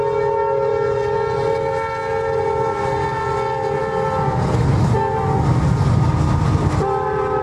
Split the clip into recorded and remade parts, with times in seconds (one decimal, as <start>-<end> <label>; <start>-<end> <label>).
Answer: 0.0-7.4 recorded